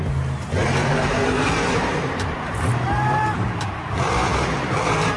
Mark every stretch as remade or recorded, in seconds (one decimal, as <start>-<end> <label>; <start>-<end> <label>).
0.0-0.8 recorded; 0.8-3.9 remade; 3.9-5.2 recorded